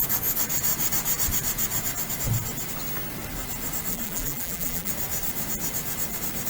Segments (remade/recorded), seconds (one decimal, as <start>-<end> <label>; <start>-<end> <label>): 0.0-3.9 recorded; 3.9-4.9 remade; 4.9-6.5 recorded

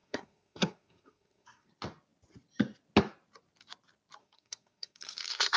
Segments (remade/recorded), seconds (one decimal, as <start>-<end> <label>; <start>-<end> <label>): 0.0-1.7 remade; 1.7-4.2 recorded; 4.2-5.6 remade

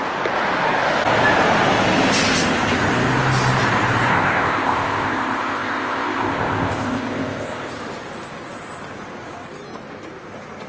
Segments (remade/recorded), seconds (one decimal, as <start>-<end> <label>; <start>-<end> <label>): 0.0-4.1 recorded; 4.1-7.7 remade; 7.7-10.7 recorded

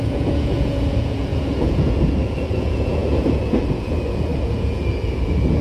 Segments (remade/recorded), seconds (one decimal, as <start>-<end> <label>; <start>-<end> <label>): 0.0-5.6 remade

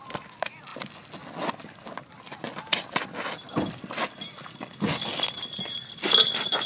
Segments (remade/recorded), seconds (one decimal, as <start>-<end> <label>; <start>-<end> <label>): 0.0-6.7 recorded